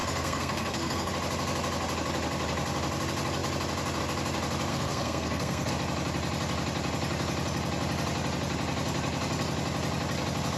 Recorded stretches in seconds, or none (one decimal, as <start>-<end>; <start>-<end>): 1.1-4.7; 5.7-10.6